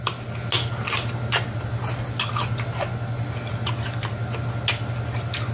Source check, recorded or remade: recorded